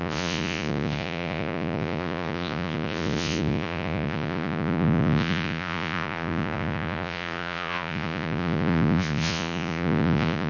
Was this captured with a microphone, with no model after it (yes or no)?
no